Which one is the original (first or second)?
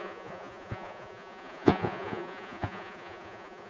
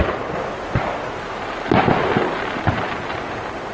second